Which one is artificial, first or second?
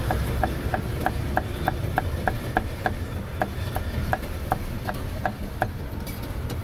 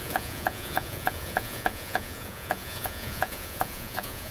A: second